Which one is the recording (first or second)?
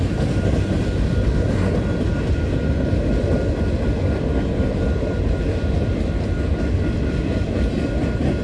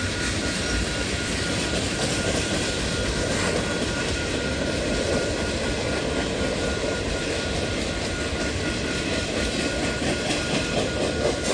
first